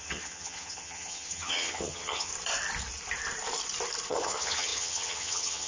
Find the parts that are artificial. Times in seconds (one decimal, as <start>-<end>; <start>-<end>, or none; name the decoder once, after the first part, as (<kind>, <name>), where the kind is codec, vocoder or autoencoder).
0.0-2.3 (vocoder, HiFi-GAN); 4.1-5.7

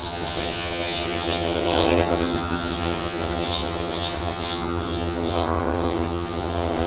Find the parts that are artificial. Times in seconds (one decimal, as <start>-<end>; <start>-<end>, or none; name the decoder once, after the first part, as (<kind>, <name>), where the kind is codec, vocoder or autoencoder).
0.0-6.9 (vocoder, HiFi-GAN)

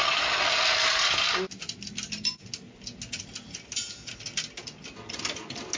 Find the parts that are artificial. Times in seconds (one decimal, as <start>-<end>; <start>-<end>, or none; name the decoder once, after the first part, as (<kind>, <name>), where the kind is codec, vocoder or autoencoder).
none

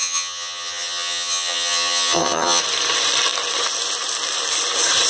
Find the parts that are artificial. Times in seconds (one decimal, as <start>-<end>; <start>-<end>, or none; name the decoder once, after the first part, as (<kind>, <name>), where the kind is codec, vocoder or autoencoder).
0.0-2.6 (vocoder, HiFi-GAN)

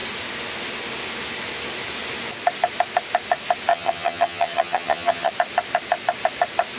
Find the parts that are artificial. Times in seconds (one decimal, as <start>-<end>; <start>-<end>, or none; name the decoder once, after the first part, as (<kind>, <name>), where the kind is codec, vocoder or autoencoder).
3.7-5.3 (vocoder, HiFi-GAN)

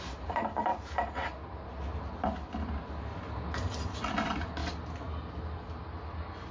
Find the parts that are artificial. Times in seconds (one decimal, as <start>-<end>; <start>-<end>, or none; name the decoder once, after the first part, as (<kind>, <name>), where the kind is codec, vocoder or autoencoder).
none